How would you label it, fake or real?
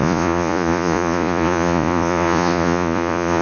fake